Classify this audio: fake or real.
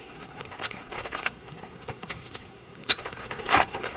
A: fake